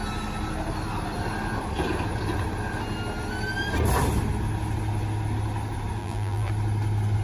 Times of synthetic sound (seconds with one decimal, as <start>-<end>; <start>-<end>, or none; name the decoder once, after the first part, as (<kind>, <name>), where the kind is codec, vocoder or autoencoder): 6.0-6.5 (vocoder, BigVGAN v2)